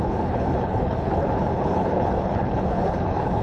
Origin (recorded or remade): remade